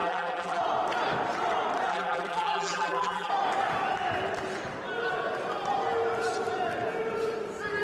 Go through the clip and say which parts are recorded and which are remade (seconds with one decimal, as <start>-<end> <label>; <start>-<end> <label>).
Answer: 0.0-0.6 remade; 0.6-1.9 recorded; 1.9-3.3 remade; 3.3-7.8 recorded